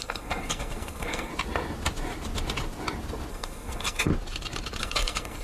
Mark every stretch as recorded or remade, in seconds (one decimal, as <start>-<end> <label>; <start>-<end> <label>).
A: 0.0-1.3 remade; 1.3-3.3 recorded; 3.3-4.1 remade; 4.1-4.8 recorded; 4.8-5.4 remade